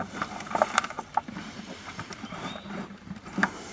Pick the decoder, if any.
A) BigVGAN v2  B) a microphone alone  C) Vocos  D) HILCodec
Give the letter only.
A